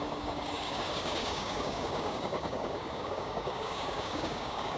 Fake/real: fake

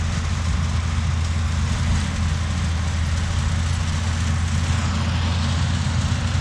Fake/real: real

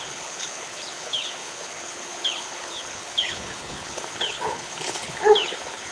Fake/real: fake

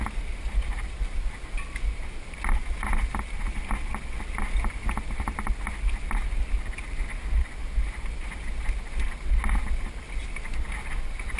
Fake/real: real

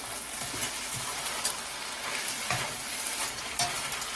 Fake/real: real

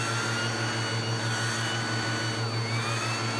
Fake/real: real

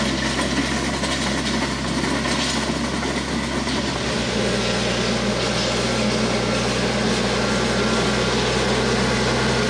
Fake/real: real